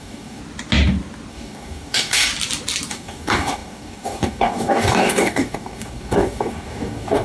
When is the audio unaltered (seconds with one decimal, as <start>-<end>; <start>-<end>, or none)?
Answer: 0.4-1.3; 2.3-2.9